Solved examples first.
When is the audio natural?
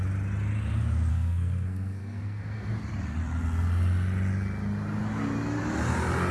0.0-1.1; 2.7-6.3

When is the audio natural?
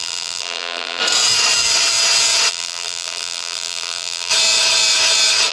1.0-2.5; 4.3-5.5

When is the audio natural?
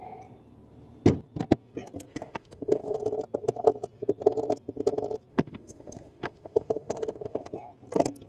0.0-2.1; 3.0-5.3; 7.5-8.3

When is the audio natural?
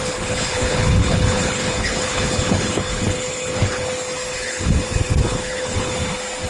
3.9-4.3; 5.9-6.5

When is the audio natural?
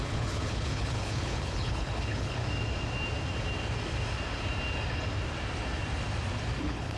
2.4-6.6